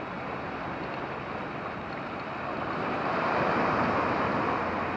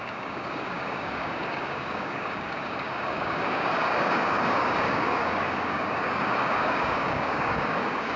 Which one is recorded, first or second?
first